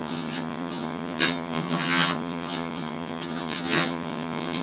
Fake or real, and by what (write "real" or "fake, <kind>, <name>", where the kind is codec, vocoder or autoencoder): fake, vocoder, HiFi-GAN